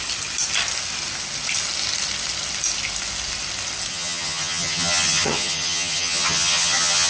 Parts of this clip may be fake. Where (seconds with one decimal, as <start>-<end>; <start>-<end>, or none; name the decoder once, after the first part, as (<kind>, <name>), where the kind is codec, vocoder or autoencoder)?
3.9-7.1 (vocoder, HiFi-GAN)